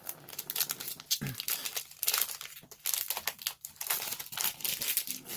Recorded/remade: recorded